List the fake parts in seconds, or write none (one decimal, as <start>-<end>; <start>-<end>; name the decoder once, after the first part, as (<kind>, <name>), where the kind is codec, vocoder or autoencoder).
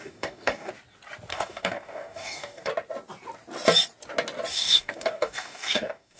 0.0-0.7 (codec, DAC); 1.3-2.7; 4.5-6.2